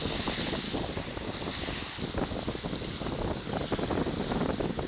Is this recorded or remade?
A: recorded